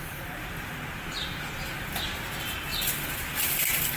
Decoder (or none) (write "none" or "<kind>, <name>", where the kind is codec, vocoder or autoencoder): none